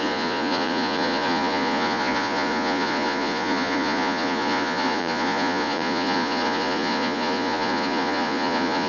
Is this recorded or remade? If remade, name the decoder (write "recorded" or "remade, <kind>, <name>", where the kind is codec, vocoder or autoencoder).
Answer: remade, vocoder, Vocos